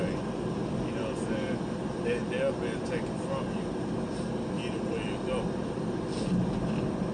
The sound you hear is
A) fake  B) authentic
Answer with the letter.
B